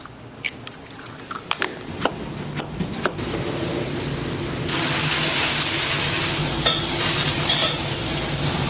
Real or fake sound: real